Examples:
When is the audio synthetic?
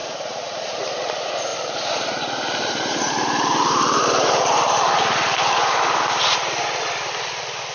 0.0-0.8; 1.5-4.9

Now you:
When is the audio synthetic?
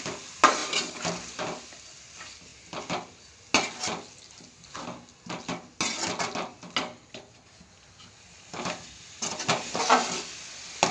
none